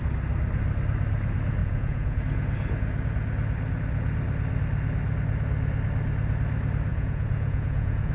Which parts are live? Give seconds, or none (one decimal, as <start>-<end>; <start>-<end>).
0.0-1.6; 2.2-6.9